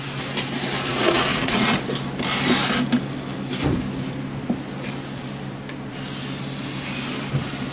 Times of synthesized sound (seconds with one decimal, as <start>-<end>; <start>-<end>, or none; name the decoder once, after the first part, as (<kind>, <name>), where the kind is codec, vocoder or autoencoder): 0.9-1.8 (vocoder, Vocos)